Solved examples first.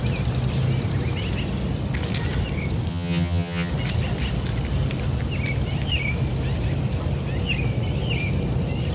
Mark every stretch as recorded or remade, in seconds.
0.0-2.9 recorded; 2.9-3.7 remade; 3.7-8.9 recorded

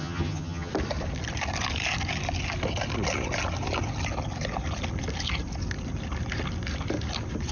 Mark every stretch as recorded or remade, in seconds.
0.0-0.7 remade; 0.7-7.5 recorded

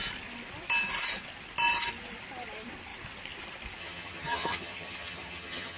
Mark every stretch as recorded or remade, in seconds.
0.0-3.8 recorded; 3.8-5.8 remade

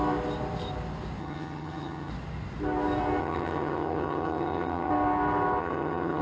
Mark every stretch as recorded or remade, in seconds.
0.0-1.2 recorded; 1.2-2.1 remade; 2.1-3.2 recorded; 3.2-4.9 remade; 4.9-5.6 recorded; 5.6-6.2 remade

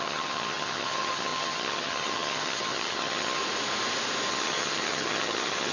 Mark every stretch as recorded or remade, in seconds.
0.0-3.4 remade; 3.4-4.3 recorded; 4.3-5.7 remade

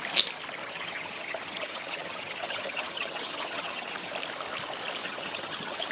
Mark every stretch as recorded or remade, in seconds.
0.0-0.6 recorded; 0.6-4.1 remade; 4.1-5.0 recorded; 5.0-5.9 remade

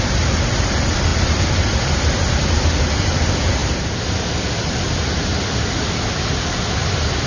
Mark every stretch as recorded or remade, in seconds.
0.0-7.3 recorded

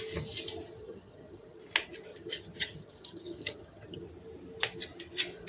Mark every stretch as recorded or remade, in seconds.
0.0-0.7 recorded; 0.7-1.6 remade; 1.6-2.1 recorded; 2.1-4.0 remade; 4.0-5.5 recorded